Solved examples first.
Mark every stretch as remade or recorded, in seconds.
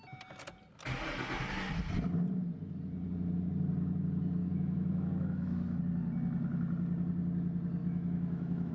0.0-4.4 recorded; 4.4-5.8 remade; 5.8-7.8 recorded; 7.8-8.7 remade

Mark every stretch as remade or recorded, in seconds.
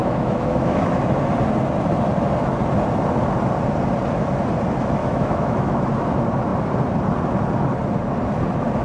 0.0-1.0 remade; 1.0-5.0 recorded; 5.0-5.8 remade; 5.8-8.8 recorded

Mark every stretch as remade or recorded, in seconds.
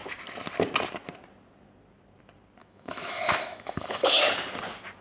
0.0-2.6 recorded; 2.6-4.2 remade; 4.2-5.0 recorded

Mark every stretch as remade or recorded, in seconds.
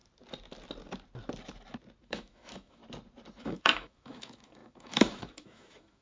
0.0-2.1 recorded; 2.1-2.8 remade; 2.8-3.4 recorded; 3.4-6.0 remade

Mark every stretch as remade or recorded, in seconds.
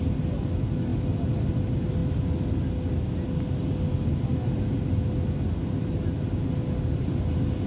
0.0-7.7 recorded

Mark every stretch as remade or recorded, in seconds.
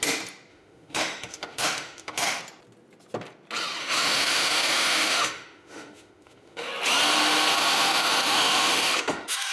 0.0-0.5 recorded; 0.5-2.4 remade; 2.4-3.8 recorded; 3.8-6.7 remade; 6.7-7.5 recorded; 7.5-9.5 remade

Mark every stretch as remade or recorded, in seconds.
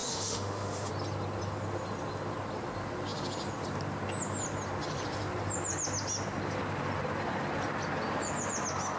0.0-0.9 remade; 0.9-9.0 recorded